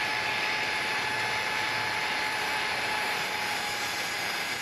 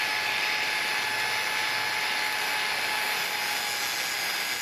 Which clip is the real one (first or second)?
second